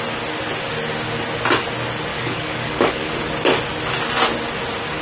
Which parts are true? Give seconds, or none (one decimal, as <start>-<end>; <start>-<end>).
0.0-2.1; 3.1-5.0